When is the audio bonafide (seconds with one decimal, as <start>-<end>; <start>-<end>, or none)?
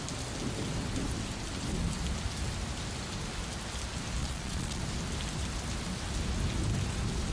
0.0-4.2; 4.8-7.3